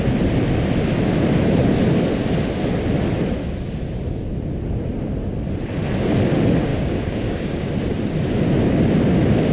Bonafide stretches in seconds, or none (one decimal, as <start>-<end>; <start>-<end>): 0.0-6.7; 7.7-9.5